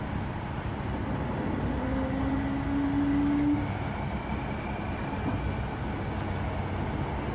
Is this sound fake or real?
real